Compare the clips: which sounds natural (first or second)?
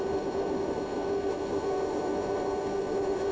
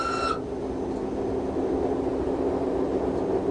second